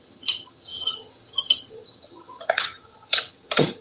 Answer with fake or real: fake